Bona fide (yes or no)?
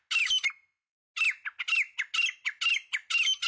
yes